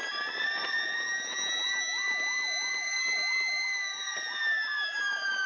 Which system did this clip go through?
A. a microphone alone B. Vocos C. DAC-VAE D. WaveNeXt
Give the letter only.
A